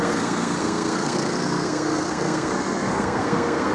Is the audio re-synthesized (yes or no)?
yes